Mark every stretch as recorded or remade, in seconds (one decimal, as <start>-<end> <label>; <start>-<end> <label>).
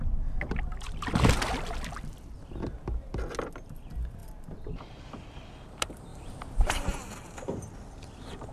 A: 0.0-6.1 recorded; 6.1-6.8 remade; 6.8-8.5 recorded